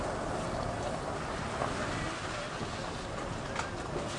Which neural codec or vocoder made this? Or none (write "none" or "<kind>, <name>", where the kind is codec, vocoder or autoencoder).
none